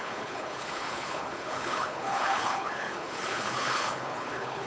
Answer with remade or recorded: remade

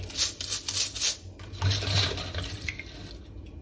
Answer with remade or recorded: recorded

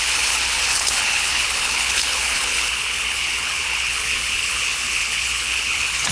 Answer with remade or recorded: remade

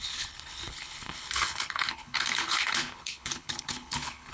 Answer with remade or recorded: remade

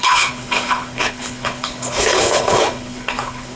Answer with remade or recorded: remade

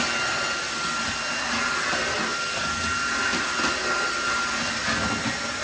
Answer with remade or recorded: recorded